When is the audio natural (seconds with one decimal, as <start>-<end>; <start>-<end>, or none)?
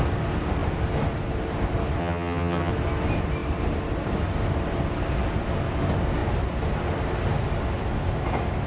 0.0-2.0; 2.7-8.7